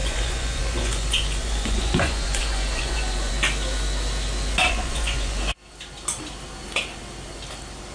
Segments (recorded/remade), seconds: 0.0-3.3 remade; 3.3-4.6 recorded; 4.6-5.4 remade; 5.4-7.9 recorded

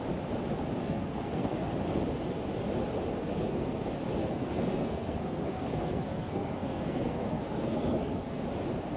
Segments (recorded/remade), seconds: 0.0-0.8 recorded; 0.8-1.7 remade; 1.7-3.2 recorded; 3.2-3.8 remade; 3.8-4.2 recorded; 4.2-8.4 remade; 8.4-9.0 recorded

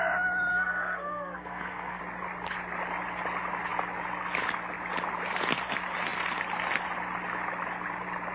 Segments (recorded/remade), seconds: 0.0-0.5 recorded; 0.5-2.0 remade; 2.0-8.3 recorded

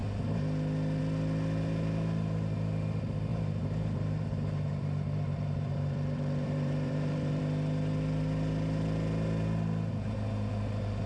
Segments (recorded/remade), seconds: 0.0-3.3 recorded; 3.3-7.4 remade; 7.4-11.1 recorded

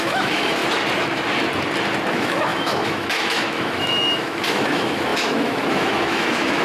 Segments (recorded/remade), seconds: 0.0-0.6 remade; 0.6-2.1 recorded; 2.1-6.6 remade